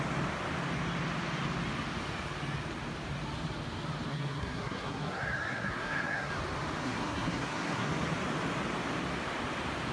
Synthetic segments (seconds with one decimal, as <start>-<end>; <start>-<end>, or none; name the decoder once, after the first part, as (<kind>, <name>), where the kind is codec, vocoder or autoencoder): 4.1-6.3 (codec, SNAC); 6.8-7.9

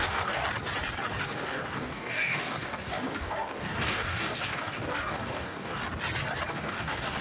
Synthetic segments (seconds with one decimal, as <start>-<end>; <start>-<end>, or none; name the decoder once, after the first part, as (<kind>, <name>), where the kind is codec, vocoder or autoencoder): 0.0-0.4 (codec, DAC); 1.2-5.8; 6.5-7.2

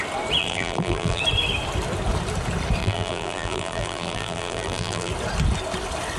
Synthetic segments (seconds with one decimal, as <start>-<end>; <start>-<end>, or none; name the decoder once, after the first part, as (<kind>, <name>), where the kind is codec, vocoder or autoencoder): 0.4-1.2 (vocoder, BigVGAN v2); 2.8-5.1